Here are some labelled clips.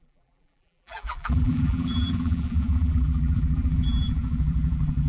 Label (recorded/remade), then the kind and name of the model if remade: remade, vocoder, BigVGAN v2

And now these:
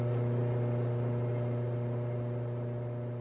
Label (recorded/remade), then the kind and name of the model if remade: recorded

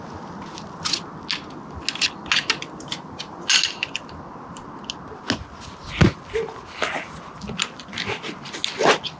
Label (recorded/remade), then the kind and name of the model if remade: recorded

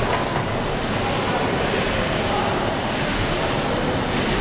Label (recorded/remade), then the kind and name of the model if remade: recorded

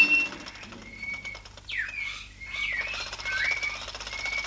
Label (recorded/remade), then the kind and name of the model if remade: recorded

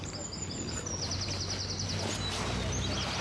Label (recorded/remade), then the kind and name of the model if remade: recorded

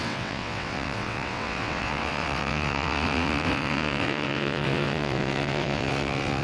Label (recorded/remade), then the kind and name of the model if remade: remade, vocoder, WaveNeXt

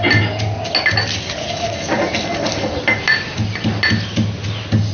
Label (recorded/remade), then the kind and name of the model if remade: recorded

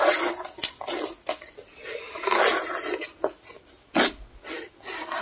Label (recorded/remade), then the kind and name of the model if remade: recorded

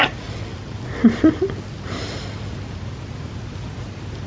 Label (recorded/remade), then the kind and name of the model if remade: recorded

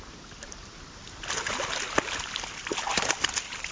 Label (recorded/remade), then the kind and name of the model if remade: recorded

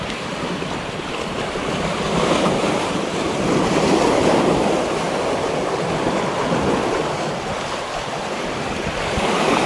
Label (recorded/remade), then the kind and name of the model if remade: remade, vocoder, BigVGAN v2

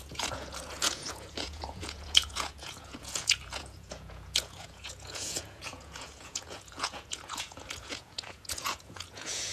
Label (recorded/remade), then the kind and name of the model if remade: remade, vocoder, Vocos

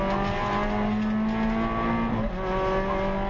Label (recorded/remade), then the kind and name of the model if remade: recorded